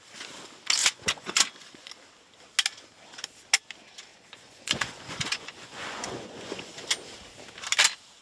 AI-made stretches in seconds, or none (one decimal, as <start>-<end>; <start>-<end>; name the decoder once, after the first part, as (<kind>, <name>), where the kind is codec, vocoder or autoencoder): 0.8-1.9 (vocoder, Vocos); 4.1-6.7